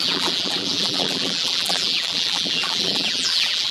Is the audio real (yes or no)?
no